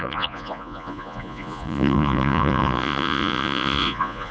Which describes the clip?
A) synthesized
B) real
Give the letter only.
A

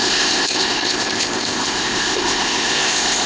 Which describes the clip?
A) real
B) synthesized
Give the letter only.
B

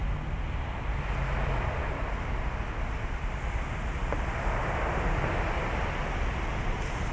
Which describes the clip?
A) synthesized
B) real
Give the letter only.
B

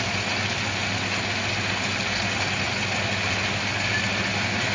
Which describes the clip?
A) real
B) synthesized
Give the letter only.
A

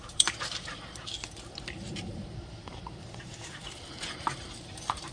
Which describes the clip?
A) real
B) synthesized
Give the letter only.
B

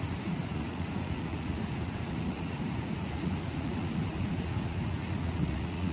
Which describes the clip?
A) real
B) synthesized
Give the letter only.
B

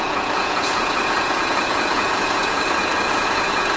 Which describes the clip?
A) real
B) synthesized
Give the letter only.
B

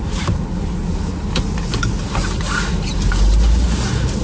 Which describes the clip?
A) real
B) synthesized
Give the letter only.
A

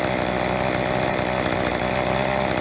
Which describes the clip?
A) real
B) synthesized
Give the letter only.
A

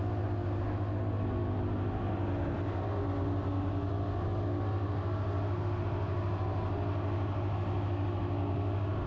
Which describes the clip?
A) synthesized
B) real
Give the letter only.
B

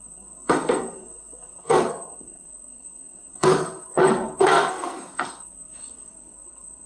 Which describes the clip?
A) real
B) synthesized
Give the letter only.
B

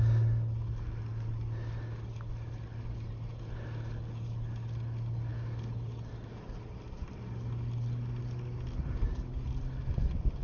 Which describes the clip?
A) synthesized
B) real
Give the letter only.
B